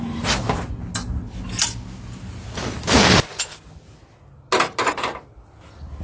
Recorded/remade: recorded